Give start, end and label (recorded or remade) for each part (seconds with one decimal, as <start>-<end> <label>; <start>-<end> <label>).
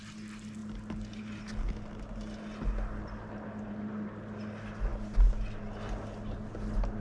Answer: 0.0-7.0 recorded